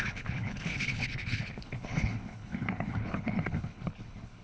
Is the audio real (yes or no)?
no